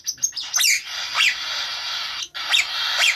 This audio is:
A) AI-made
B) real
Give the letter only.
B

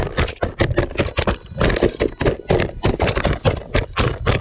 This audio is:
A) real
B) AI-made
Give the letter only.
A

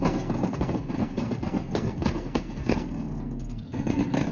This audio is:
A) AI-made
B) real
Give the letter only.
A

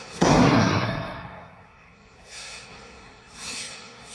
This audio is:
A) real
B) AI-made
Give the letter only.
B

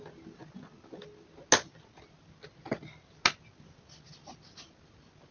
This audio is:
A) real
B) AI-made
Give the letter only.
A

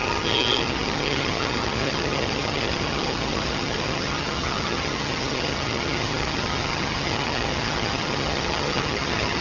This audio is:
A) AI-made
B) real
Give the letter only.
A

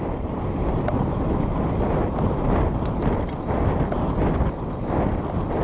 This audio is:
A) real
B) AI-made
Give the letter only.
A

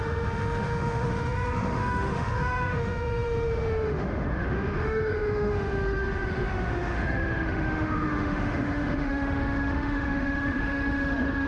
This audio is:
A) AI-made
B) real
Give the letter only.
A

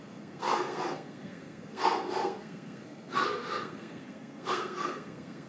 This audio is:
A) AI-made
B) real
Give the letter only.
A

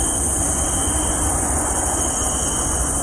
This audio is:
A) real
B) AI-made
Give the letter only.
B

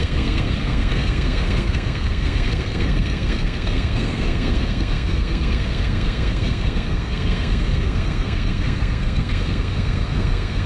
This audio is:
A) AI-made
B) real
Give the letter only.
A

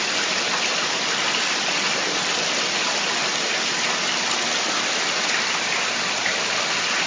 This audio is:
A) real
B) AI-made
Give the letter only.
A